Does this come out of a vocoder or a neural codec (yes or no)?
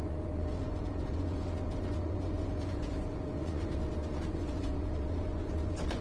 yes